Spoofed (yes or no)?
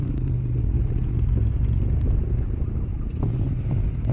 no